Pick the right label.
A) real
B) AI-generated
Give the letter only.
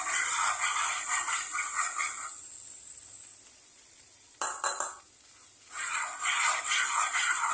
B